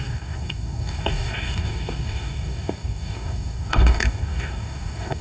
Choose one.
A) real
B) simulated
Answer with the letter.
B